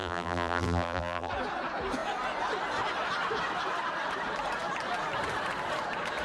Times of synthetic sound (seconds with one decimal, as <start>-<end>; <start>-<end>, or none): 0.0-1.3